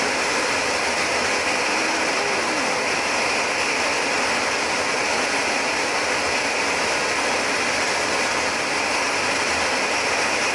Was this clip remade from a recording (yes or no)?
no